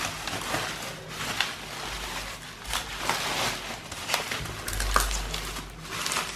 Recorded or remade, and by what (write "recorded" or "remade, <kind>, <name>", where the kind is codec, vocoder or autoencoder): recorded